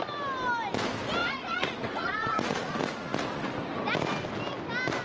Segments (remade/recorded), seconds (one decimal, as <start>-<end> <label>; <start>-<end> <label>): 0.0-1.2 recorded; 1.2-3.5 remade; 3.5-5.0 recorded